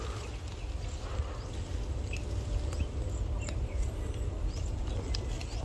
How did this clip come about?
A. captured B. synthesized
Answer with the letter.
A